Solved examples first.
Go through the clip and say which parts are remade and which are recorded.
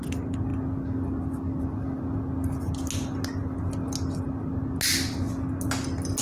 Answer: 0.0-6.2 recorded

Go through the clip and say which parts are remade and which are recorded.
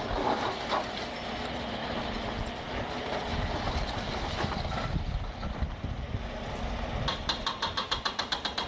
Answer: 0.0-8.7 recorded